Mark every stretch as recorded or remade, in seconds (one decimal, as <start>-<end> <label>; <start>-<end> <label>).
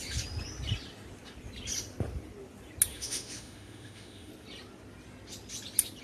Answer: 0.0-2.9 recorded; 2.9-4.3 remade; 4.3-6.0 recorded